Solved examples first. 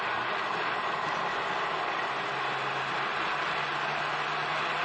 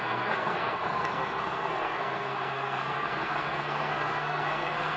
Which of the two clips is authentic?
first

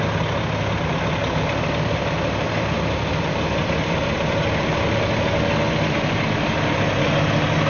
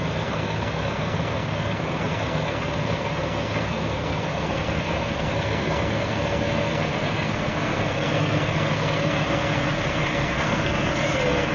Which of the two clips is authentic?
first